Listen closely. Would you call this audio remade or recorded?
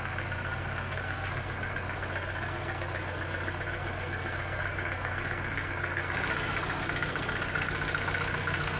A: remade